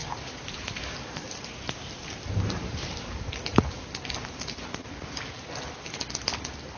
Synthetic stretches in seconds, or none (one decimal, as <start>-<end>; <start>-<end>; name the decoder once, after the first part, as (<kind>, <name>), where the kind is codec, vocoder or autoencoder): 0.0-3.8 (vocoder, BigVGAN v2)